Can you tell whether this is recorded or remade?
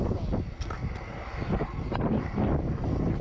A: recorded